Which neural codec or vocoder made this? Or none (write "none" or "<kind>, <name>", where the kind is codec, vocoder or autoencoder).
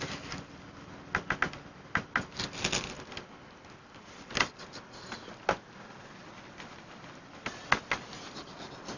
none